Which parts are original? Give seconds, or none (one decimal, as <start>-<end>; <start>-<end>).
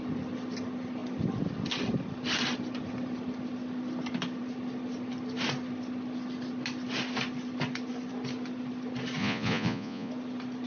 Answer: 0.0-9.2; 10.1-10.7